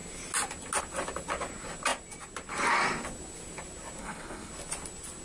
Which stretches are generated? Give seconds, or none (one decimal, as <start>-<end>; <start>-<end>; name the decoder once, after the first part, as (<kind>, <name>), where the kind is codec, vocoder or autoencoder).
4.0-4.5 (codec, HILCodec)

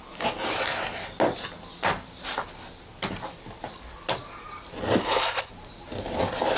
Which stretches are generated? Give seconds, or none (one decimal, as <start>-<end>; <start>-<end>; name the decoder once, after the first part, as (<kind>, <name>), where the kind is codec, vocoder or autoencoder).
5.0-5.5 (codec, HILCodec)

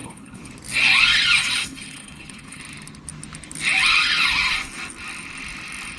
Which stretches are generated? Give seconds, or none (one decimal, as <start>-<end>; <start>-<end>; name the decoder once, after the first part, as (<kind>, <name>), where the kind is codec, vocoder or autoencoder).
0.0-0.5 (codec, HILCodec); 1.6-2.6

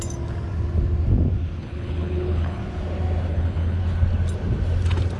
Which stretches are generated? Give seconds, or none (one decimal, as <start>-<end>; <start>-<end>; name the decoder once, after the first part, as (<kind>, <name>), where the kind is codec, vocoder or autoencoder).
1.6-2.6 (codec, HILCodec); 3.3-3.8

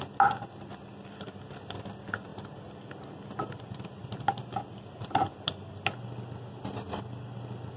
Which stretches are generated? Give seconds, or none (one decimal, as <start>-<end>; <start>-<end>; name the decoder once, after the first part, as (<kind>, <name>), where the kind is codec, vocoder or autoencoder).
none

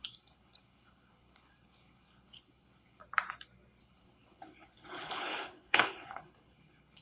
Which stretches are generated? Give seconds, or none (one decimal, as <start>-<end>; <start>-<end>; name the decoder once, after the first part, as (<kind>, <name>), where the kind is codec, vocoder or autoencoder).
0.0-3.0 (codec, HILCodec); 3.8-7.0

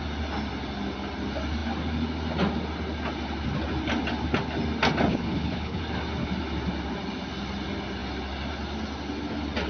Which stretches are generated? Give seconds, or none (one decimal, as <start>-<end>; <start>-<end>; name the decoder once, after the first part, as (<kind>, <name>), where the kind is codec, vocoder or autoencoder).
5.1-5.8 (codec, HILCodec)

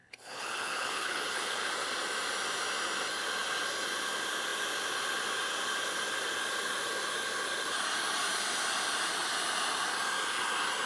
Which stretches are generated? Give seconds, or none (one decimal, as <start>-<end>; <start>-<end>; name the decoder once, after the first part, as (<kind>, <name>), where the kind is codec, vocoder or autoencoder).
0.0-1.7 (codec, HILCodec)